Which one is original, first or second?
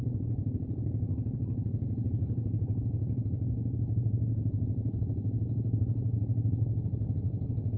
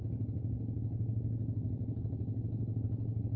second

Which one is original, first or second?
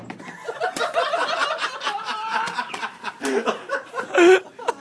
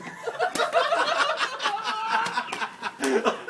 second